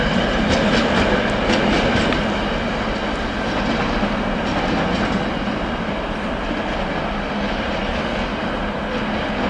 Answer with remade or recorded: recorded